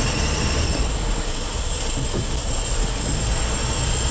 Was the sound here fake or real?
real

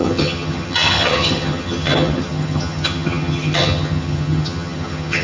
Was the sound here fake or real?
fake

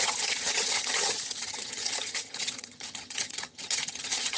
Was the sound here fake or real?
fake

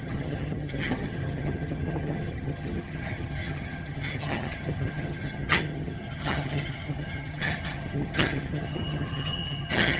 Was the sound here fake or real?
fake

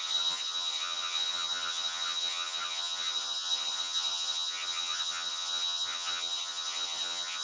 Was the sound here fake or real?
fake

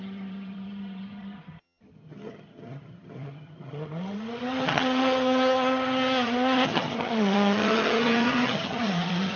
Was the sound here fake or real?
fake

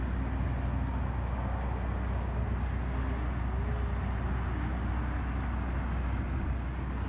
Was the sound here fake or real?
real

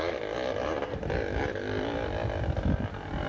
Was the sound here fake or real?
real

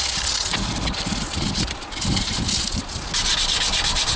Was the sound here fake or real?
real